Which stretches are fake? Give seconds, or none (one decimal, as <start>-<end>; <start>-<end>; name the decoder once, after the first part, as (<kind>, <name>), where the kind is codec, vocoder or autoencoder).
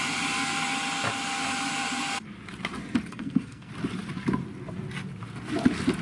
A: 3.1-3.7 (codec, SNAC)